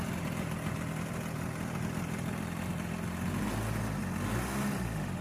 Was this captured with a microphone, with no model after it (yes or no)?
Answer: yes